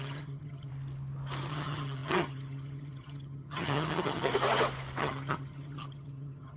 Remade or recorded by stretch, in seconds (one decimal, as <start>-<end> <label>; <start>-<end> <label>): 0.0-0.7 remade; 0.7-1.5 recorded; 1.5-4.3 remade; 4.3-5.0 recorded; 5.0-6.6 remade